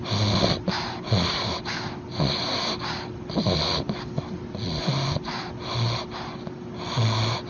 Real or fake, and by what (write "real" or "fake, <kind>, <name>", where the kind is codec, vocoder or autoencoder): real